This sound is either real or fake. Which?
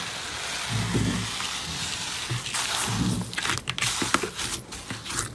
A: real